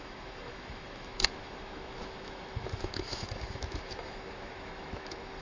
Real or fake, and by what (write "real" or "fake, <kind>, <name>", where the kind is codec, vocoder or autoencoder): fake, autoencoder, DAC-VAE